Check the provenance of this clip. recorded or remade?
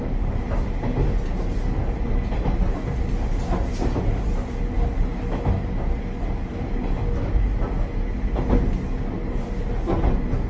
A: recorded